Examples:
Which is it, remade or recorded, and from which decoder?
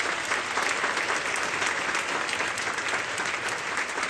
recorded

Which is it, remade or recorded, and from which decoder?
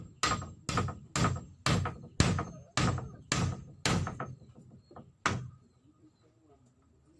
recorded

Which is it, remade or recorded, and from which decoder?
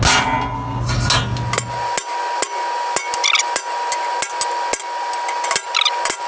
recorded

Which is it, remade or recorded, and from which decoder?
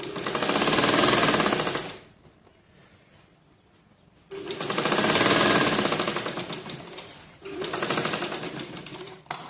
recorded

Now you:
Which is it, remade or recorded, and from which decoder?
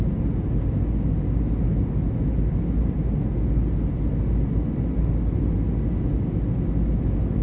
recorded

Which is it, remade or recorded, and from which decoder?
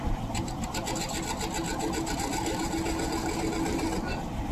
recorded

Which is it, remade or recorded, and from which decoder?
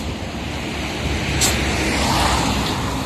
recorded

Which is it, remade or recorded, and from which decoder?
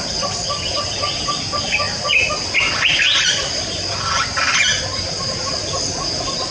recorded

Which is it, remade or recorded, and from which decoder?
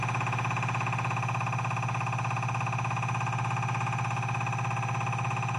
recorded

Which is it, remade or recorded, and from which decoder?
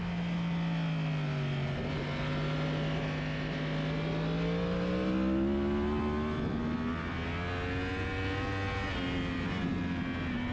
recorded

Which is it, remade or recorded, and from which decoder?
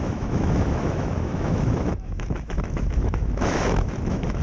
remade, autoencoder, DAC-VAE